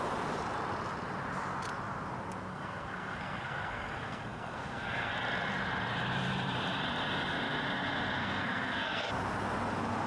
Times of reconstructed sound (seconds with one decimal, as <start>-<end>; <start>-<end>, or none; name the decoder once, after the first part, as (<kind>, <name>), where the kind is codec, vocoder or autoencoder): 2.5-5.1 (codec, SNAC); 8.2-9.1